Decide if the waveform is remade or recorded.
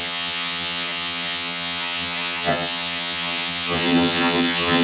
remade